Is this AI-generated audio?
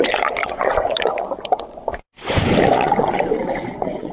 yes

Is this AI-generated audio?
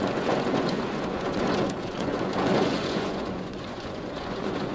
yes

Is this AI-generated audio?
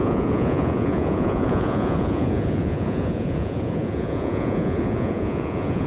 yes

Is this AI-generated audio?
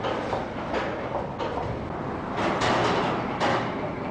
no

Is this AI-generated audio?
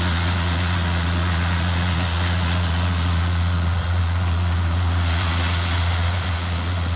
yes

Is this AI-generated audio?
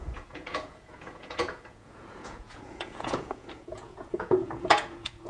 yes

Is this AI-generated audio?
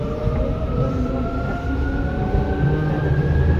no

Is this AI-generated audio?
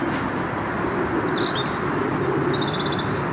no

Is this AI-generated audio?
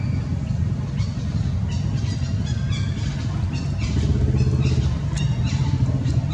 no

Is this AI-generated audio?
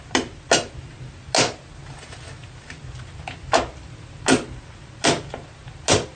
no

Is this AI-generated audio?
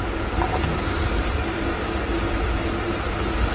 no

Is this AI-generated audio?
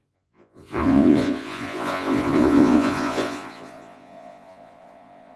yes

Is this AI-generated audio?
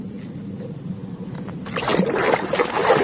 no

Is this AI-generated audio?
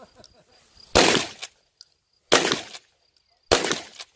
no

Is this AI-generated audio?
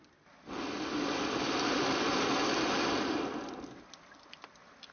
no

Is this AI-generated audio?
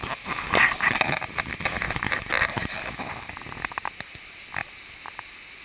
no